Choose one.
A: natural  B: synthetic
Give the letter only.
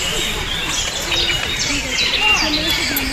A